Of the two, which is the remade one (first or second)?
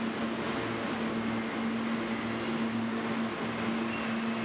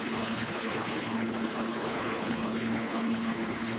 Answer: second